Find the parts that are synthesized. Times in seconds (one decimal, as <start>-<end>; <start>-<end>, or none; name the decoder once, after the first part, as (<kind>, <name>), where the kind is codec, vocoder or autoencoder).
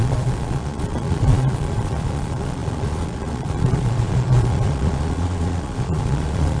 0.0-6.6 (vocoder, Vocos)